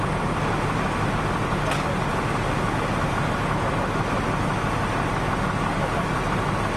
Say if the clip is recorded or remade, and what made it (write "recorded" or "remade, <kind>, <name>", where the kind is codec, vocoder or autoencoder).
recorded